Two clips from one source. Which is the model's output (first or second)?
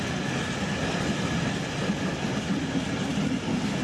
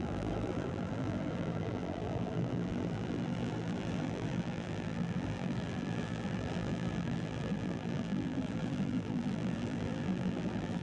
second